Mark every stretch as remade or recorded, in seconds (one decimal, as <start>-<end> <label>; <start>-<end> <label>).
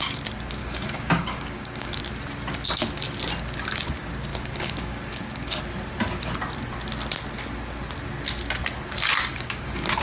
0.0-0.6 recorded; 0.6-2.0 remade; 2.0-4.3 recorded; 4.3-5.6 remade; 5.6-9.3 recorded; 9.3-10.0 remade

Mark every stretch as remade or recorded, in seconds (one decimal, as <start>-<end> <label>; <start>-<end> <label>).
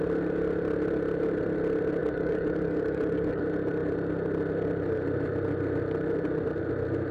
0.0-2.0 recorded; 2.0-3.4 remade; 3.4-7.1 recorded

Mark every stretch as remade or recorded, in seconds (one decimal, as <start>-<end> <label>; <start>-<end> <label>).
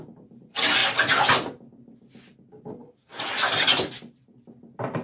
0.0-5.0 recorded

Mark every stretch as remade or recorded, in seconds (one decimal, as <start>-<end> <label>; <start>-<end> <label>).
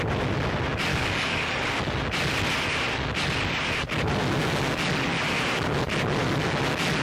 0.0-0.9 recorded; 0.9-1.6 remade; 1.6-7.0 recorded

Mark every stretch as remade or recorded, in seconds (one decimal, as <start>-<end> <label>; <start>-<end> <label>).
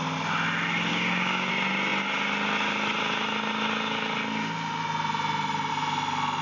0.0-0.9 recorded; 0.9-1.5 remade; 1.5-6.4 recorded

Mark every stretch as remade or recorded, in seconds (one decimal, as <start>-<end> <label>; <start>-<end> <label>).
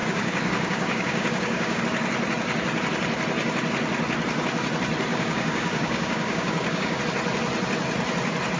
0.0-1.8 remade; 1.8-5.1 recorded; 5.1-7.0 remade; 7.0-8.6 recorded